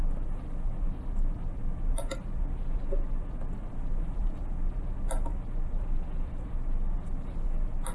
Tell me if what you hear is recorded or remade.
recorded